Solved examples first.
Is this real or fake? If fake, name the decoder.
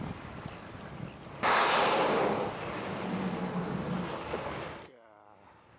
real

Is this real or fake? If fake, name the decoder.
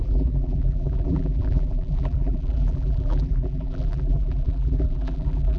fake, vocoder, BigVGAN v2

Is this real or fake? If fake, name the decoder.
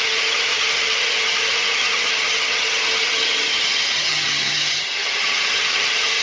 fake, vocoder, HiFi-GAN